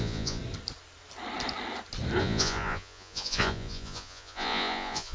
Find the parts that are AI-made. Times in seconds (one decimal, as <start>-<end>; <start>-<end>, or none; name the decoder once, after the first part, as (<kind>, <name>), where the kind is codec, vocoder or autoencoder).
0.0-0.4 (vocoder, Vocos); 2.2-5.1